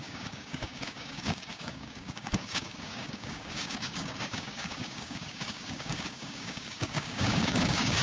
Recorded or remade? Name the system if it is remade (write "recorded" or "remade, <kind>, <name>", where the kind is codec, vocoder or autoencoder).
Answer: remade, codec, DAC